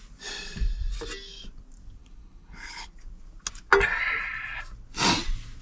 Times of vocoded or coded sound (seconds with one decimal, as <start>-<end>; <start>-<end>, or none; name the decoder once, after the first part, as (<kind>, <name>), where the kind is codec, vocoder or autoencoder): 2.0-2.9 (codec, HILCodec)